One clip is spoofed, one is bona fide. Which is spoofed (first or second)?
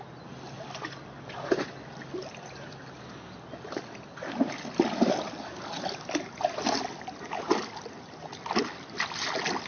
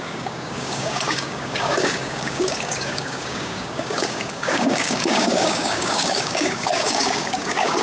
second